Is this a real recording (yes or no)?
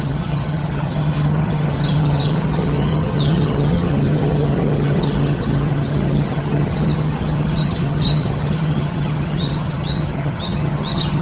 no